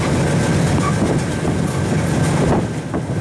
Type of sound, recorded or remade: recorded